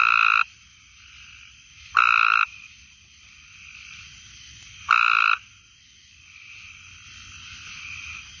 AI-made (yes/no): no